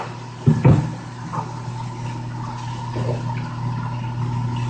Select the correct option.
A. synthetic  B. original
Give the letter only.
B